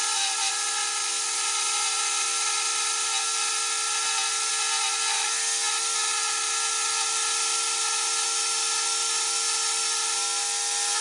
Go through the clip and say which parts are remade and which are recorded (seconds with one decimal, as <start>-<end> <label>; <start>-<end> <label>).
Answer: 0.0-11.0 recorded